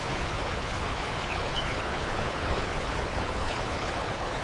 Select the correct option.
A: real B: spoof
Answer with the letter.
B